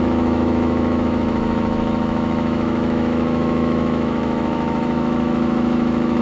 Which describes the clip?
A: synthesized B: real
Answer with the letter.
A